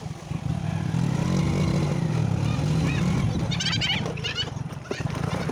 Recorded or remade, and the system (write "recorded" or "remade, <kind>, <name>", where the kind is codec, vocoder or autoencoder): recorded